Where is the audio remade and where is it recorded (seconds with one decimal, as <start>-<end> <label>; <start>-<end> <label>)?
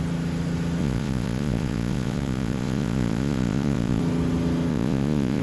0.0-0.8 recorded; 0.8-4.0 remade; 4.0-4.7 recorded; 4.7-5.4 remade